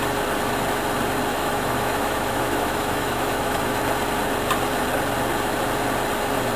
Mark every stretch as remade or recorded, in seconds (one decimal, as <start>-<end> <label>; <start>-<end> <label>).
0.0-1.3 recorded; 1.3-3.8 remade; 3.8-6.6 recorded